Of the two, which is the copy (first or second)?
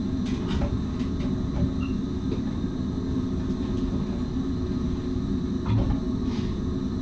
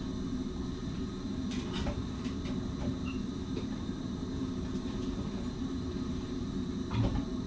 second